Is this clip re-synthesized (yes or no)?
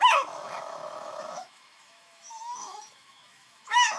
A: yes